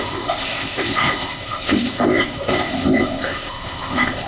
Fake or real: fake